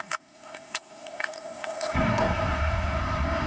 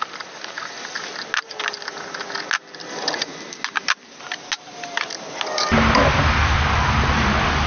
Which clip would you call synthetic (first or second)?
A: first